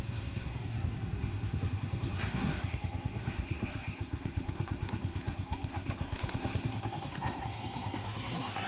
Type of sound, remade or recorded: remade